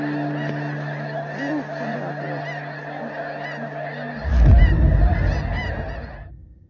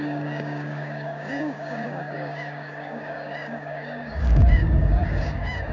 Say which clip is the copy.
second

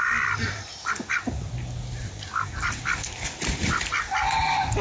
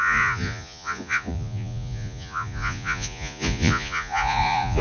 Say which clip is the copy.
second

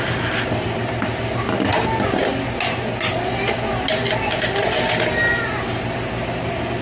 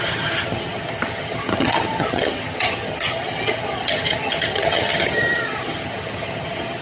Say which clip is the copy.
second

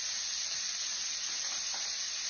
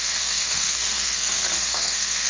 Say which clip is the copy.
second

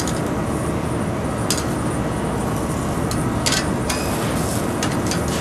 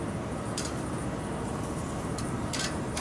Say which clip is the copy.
second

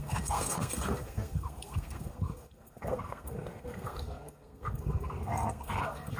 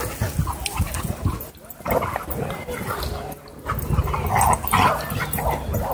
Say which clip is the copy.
first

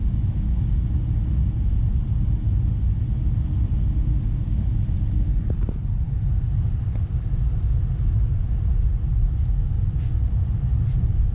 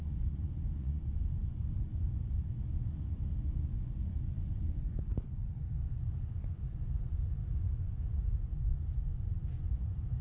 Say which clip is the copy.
second